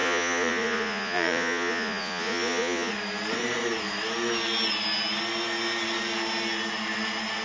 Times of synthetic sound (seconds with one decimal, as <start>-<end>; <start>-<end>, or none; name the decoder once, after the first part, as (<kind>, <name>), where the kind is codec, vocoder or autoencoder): 0.0-2.9 (vocoder, Vocos)